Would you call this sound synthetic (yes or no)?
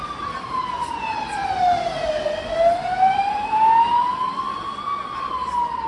no